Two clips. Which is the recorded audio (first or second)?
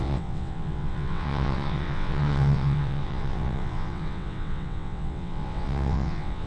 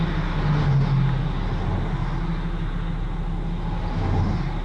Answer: second